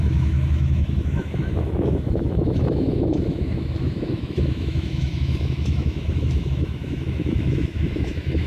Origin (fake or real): fake